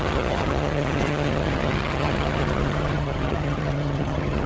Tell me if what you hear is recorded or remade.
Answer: remade